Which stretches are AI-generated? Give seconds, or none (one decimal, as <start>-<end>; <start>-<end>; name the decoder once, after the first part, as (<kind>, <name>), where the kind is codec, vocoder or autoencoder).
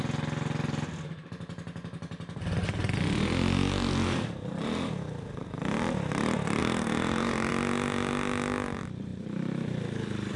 6.6-7.5 (vocoder, BigVGAN v2); 9.1-9.8